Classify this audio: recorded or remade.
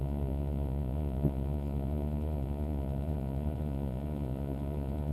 remade